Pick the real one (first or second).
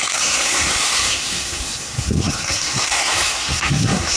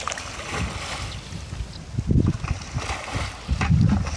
second